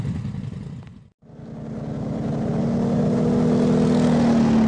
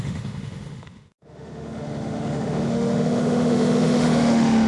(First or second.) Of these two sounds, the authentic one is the first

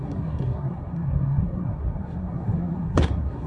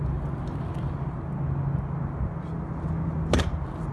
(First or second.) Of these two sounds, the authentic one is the second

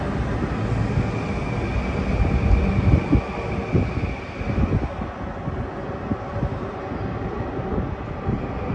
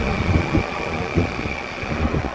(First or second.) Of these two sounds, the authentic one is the first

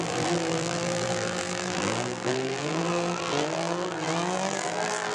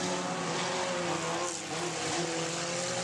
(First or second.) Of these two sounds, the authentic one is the second